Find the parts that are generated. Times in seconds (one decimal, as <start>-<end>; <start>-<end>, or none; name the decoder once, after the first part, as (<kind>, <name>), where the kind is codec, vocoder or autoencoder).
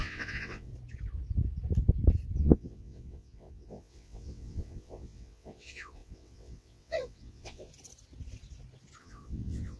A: 0.0-0.7 (vocoder, WaveNeXt); 2.4-7.7; 9.0-9.8